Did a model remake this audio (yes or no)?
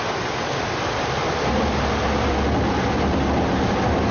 no